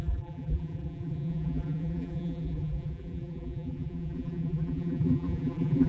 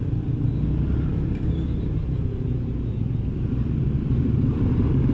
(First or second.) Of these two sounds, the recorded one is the second